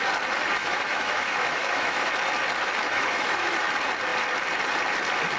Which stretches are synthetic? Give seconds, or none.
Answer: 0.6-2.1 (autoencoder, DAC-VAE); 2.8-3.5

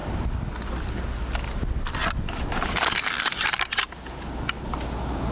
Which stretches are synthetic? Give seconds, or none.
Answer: none

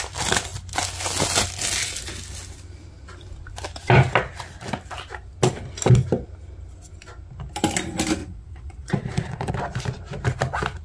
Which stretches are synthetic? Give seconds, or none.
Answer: 8.2-9.5 (vocoder, Vocos)

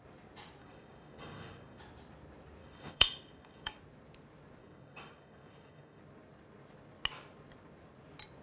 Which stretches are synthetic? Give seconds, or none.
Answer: 0.6-1.8 (codec, DAC); 2.6-3.8; 4.6-6.0

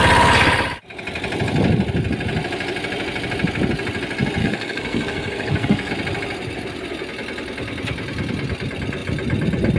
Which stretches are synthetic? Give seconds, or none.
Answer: 4.4-5.9 (codec, SNAC)